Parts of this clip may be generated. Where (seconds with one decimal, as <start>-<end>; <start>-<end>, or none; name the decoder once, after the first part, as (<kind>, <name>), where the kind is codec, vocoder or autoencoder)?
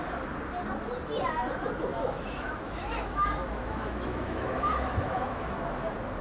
1.9-5.6 (autoencoder, DAC-VAE)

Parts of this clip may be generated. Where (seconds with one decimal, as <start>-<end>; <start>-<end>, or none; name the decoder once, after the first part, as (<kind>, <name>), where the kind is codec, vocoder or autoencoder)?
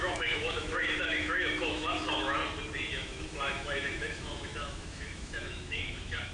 0.0-2.4 (autoencoder, DAC-VAE); 2.9-6.3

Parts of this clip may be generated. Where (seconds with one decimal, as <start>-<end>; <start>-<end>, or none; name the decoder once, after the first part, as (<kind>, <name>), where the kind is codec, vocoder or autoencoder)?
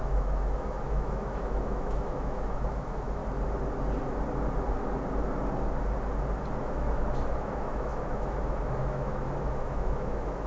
0.0-3.2 (autoencoder, DAC-VAE); 6.6-10.5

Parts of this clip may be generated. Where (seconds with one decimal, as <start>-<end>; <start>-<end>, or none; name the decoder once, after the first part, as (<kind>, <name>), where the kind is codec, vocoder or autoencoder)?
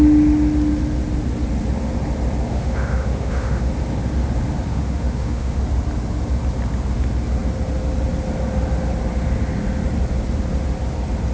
2.5-3.7 (autoencoder, DAC-VAE); 4.7-5.6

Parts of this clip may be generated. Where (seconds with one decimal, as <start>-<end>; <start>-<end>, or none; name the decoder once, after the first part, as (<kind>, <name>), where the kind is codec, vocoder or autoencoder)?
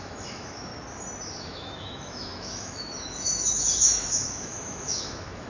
0.0-0.7 (autoencoder, DAC-VAE); 1.4-5.5